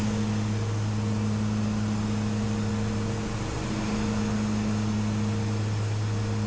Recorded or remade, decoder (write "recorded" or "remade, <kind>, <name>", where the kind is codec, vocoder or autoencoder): recorded